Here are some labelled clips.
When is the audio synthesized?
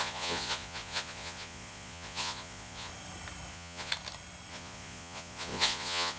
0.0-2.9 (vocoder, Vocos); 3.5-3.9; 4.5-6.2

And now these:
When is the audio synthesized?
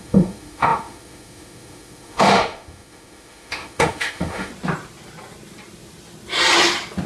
0.0-4.5 (autoencoder, DAC-VAE)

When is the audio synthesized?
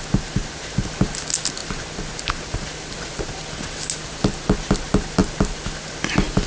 none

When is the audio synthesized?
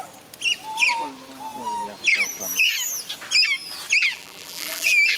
4.0-5.2 (vocoder, BigVGAN v2)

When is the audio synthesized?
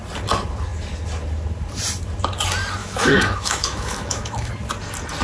2.8-4.5 (autoencoder, DAC-VAE)